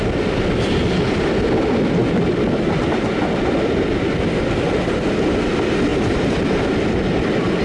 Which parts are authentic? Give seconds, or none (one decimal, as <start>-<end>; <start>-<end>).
0.0-7.6